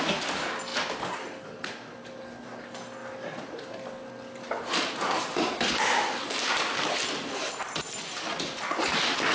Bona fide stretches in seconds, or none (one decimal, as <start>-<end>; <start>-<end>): 0.0-9.3